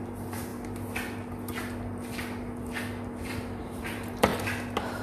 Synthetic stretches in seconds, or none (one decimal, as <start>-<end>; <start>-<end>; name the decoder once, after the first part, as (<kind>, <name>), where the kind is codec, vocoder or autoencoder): 0.0-0.5 (vocoder, BigVGAN v2); 3.2-4.3